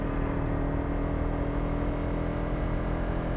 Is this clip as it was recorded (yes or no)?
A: yes